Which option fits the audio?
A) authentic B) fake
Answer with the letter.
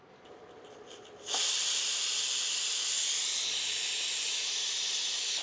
A